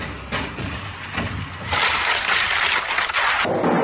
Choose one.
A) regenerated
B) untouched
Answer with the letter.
B